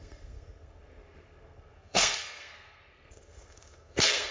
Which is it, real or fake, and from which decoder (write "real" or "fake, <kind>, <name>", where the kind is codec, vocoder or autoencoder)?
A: fake, codec, SNAC